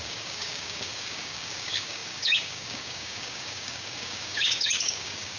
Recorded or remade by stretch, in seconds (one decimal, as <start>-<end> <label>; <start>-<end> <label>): 0.0-5.4 remade